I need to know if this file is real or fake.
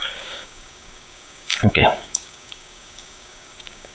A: fake